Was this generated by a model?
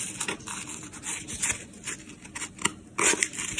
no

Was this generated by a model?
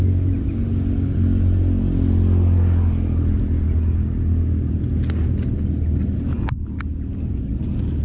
no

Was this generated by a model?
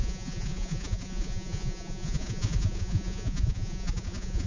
yes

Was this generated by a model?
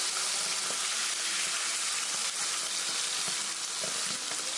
no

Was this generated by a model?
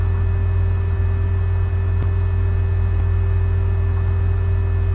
no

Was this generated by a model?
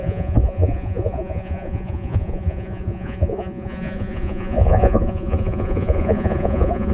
yes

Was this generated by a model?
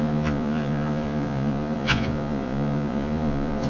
yes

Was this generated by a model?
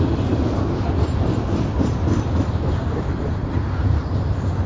no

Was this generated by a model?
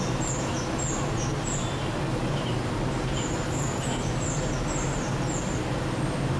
no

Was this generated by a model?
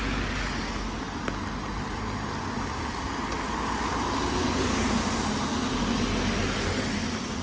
no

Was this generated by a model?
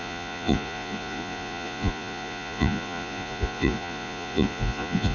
yes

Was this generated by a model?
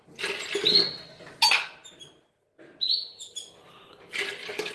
no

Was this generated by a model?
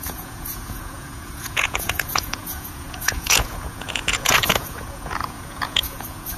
yes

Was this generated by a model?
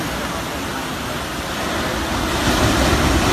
no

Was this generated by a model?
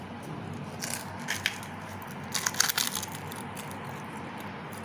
no